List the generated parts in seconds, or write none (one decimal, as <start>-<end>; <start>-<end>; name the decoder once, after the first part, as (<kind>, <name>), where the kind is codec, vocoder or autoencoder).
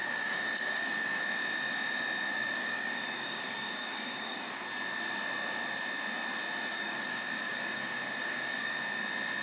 0.0-1.2 (codec, DAC); 2.3-4.6; 6.7-9.0